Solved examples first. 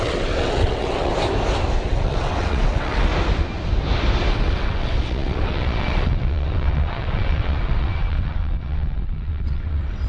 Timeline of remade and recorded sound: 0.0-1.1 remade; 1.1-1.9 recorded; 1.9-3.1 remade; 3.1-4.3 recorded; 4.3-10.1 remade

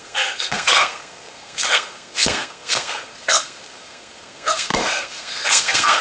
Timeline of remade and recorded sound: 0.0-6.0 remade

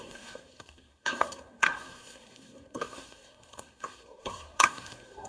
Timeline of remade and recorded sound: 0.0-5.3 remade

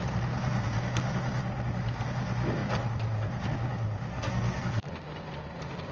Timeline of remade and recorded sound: 0.0-4.1 recorded; 4.1-4.9 remade; 4.9-5.9 recorded